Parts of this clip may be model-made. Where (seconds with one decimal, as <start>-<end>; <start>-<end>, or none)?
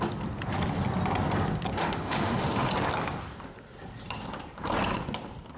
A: 1.8-2.7